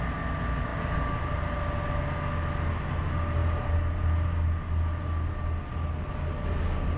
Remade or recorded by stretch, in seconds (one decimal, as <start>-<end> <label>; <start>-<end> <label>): 0.0-7.0 recorded